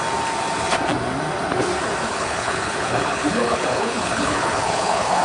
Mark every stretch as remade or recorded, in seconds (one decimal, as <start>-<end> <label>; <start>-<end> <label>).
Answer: 0.0-2.1 recorded; 2.1-5.2 remade